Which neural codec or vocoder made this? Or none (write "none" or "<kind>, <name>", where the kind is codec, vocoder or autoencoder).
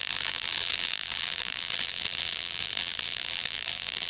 vocoder, BigVGAN v2